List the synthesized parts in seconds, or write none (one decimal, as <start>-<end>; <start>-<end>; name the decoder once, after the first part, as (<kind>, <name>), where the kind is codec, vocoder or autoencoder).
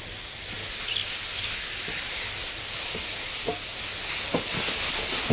none